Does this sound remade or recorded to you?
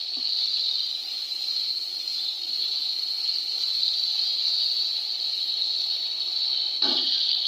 recorded